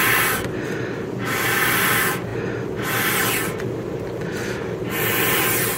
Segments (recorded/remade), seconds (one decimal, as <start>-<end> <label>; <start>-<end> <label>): 0.0-5.8 recorded